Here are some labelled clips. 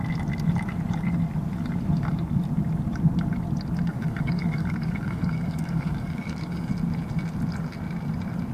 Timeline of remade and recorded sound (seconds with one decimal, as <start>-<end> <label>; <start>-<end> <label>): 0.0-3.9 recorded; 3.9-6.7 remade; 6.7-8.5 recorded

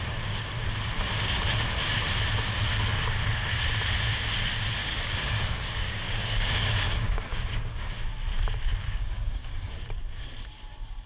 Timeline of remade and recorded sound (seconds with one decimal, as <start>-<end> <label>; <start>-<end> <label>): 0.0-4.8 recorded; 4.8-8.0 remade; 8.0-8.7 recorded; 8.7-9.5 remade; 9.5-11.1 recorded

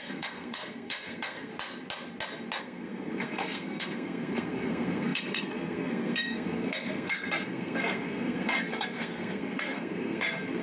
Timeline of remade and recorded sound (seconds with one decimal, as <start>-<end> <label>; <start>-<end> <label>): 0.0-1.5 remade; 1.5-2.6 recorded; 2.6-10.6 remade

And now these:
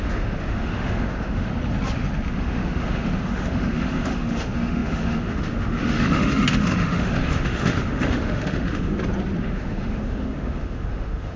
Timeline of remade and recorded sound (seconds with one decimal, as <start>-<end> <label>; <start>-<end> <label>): 0.0-1.5 remade; 1.5-2.3 recorded; 2.3-8.9 remade; 8.9-9.4 recorded; 9.4-11.4 remade

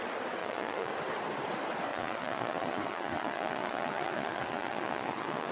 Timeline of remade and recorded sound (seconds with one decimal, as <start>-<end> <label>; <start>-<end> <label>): 0.0-0.4 recorded; 0.4-0.9 remade; 0.9-1.9 recorded; 1.9-5.5 remade

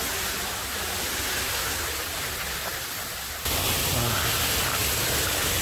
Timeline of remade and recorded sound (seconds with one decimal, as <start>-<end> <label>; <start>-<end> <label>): 0.0-5.6 recorded